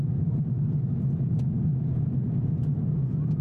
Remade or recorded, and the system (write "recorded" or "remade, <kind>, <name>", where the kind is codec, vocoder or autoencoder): remade, vocoder, Vocos